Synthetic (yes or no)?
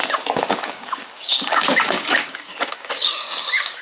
yes